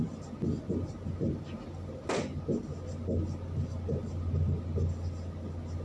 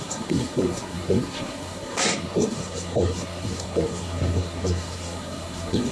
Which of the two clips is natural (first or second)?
first